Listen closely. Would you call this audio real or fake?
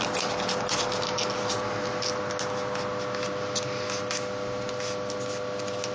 real